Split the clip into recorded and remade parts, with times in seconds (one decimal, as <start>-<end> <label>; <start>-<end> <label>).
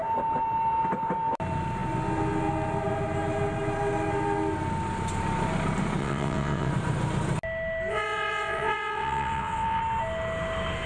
0.0-6.0 recorded; 6.0-6.7 remade; 6.7-7.9 recorded; 7.9-9.8 remade; 9.8-10.9 recorded